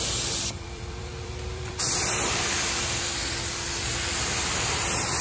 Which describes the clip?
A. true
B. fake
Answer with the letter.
B